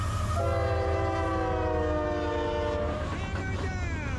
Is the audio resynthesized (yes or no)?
no